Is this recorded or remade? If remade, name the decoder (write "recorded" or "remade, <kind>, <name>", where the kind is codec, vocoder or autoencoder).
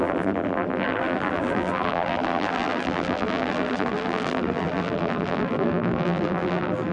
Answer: remade, vocoder, BigVGAN v2